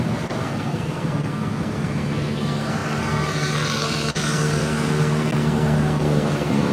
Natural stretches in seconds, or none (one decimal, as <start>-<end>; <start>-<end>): none

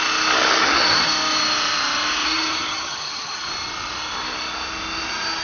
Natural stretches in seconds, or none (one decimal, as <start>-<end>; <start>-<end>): 0.0-0.6; 1.1-2.2; 3.5-5.4

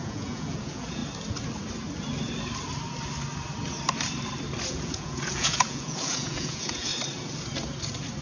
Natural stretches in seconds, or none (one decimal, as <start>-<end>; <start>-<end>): 1.0-4.7; 6.9-8.2

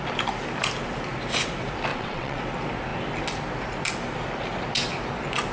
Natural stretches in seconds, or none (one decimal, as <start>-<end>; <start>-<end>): 0.0-1.9; 2.4-5.5

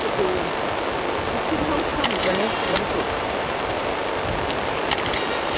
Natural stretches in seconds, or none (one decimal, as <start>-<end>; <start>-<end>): 0.0-1.9; 3.9-5.6